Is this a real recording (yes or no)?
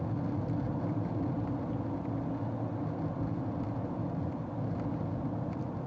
yes